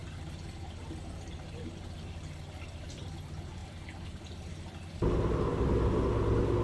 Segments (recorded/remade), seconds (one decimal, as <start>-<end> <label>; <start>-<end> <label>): 0.0-6.6 recorded